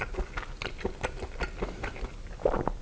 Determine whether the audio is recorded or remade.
recorded